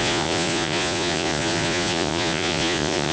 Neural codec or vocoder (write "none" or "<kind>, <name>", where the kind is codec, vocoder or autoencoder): vocoder, Vocos